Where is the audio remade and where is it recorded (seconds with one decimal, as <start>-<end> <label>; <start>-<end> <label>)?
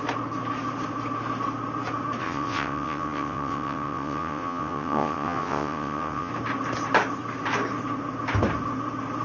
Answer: 0.0-2.2 recorded; 2.2-6.3 remade; 6.3-9.2 recorded